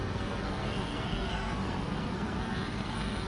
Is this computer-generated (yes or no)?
yes